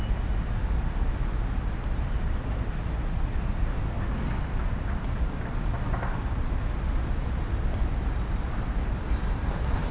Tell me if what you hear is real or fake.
real